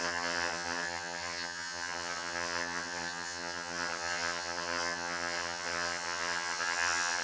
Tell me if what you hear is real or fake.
fake